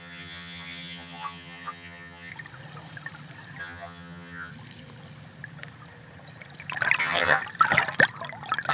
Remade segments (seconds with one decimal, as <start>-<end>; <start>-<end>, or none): 0.0-2.3; 3.6-4.5; 7.0-7.4